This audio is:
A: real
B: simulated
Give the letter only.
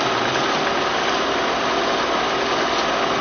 A